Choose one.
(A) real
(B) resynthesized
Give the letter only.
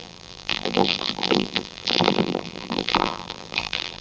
B